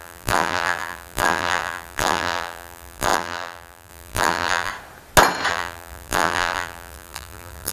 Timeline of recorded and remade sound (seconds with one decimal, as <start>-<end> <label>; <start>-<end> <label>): 0.0-4.7 remade; 4.7-5.5 recorded; 5.5-7.7 remade

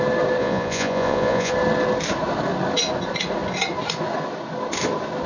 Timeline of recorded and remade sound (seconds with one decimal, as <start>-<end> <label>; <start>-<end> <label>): 0.0-0.4 recorded; 0.4-1.5 remade; 1.5-5.3 recorded

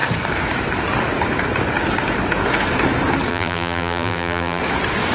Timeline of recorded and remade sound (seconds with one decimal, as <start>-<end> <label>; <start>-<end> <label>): 0.0-3.3 recorded; 3.3-4.6 remade; 4.6-5.1 recorded

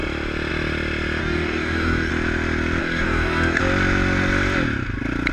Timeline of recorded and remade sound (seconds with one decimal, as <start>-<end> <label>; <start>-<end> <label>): 0.0-1.2 recorded; 1.2-2.1 remade; 2.1-2.8 recorded; 2.8-3.6 remade; 3.6-5.3 recorded